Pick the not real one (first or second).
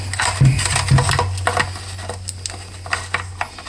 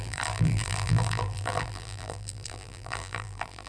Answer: second